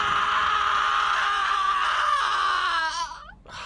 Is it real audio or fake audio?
fake